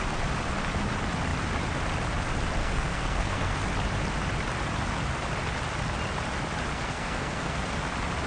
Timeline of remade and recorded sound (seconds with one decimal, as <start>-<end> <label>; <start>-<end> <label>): 0.0-2.6 recorded; 2.6-3.7 remade; 3.7-6.7 recorded; 6.7-7.7 remade; 7.7-8.3 recorded